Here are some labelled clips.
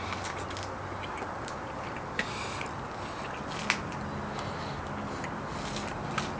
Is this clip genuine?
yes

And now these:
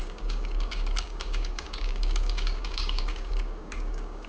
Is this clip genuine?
no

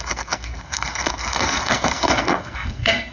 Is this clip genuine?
no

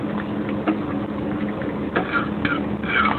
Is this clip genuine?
yes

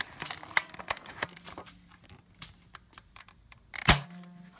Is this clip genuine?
no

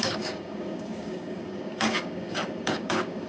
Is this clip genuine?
no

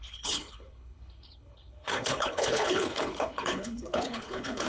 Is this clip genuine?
no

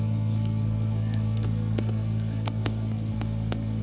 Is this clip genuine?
no